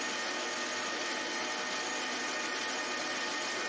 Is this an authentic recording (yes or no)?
yes